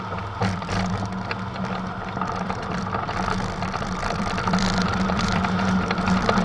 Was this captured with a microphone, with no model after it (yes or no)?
no